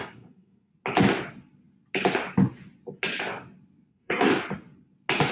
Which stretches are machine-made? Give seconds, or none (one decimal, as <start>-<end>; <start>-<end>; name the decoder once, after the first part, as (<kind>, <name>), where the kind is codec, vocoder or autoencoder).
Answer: 0.0-0.7 (codec, SNAC); 3.9-4.3